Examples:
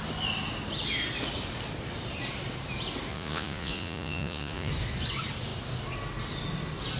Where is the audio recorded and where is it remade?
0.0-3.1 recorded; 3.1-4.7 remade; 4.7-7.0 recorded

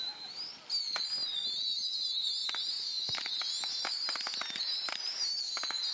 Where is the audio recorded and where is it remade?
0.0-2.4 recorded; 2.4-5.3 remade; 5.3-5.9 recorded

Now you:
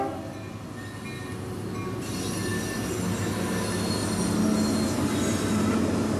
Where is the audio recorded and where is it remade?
0.0-6.2 recorded

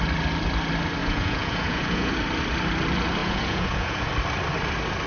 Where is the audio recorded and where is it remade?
0.0-1.0 recorded; 1.0-2.1 remade; 2.1-3.2 recorded; 3.2-4.1 remade; 4.1-5.1 recorded

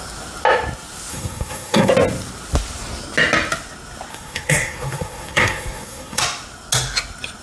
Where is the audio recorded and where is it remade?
0.0-1.1 recorded; 1.1-1.9 remade; 1.9-4.1 recorded; 4.1-6.2 remade; 6.2-7.4 recorded